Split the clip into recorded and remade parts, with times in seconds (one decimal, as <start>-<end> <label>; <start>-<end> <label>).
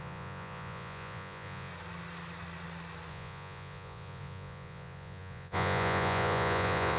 0.0-1.7 remade; 1.7-3.1 recorded; 3.1-7.0 remade